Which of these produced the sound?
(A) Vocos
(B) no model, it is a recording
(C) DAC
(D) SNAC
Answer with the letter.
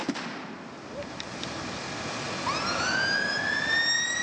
B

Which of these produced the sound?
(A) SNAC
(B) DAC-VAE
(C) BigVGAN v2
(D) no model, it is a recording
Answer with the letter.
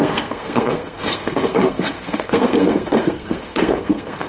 A